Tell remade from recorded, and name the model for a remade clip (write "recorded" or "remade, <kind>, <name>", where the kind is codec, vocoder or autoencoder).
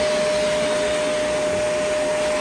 recorded